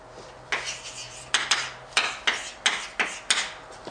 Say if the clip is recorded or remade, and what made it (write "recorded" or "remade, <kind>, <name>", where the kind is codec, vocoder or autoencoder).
recorded